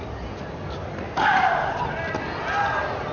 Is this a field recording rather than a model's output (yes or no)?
yes